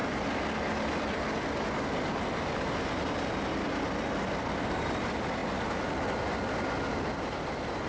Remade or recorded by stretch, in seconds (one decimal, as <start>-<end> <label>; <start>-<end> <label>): 0.0-7.9 recorded